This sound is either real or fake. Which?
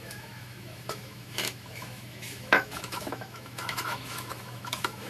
fake